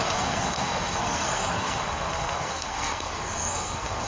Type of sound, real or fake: fake